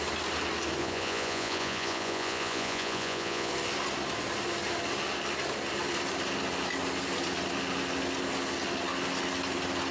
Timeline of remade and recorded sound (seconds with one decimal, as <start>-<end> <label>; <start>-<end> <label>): 0.0-0.8 recorded; 0.8-3.5 remade; 3.5-9.9 recorded